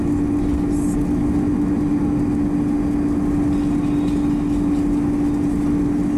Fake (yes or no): no